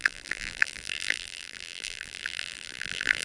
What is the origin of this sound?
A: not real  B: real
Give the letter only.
A